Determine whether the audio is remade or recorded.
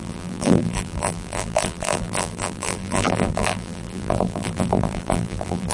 remade